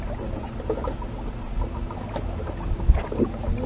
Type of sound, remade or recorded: recorded